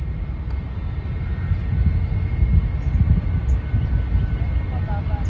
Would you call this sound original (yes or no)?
yes